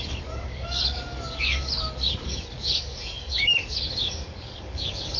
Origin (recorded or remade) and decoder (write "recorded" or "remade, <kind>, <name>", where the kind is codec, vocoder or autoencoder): remade, codec, DAC